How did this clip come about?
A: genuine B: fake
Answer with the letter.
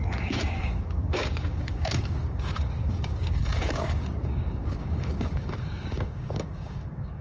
B